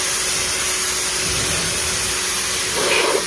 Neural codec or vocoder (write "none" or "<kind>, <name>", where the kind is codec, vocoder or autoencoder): none